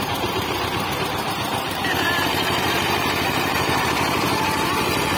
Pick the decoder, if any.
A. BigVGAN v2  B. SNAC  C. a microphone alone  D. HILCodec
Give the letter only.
A